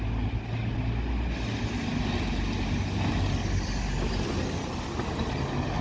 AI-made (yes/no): no